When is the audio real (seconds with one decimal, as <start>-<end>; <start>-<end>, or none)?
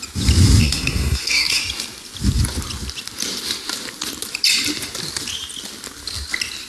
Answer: 0.0-0.6; 1.6-6.7